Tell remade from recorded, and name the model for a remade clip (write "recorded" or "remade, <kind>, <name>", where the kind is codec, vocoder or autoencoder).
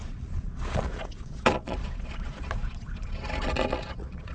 remade, vocoder, Vocos